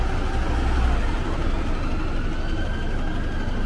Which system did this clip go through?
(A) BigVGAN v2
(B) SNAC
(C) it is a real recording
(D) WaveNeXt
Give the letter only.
C